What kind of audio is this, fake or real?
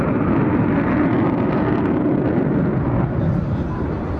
real